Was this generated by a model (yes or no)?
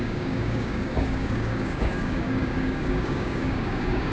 yes